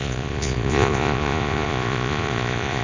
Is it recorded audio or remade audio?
remade